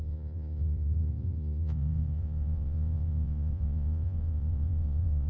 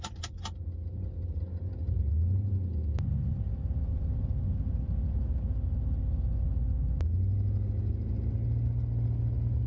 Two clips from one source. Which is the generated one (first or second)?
first